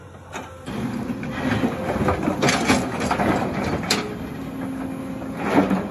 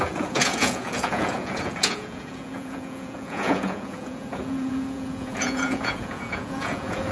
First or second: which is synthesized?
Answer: second